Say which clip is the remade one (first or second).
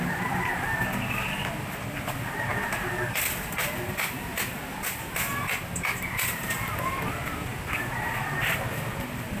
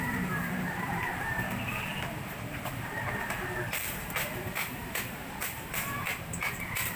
second